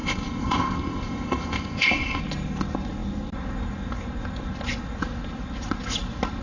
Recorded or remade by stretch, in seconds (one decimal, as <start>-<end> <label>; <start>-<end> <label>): 0.0-2.2 remade; 2.2-6.4 recorded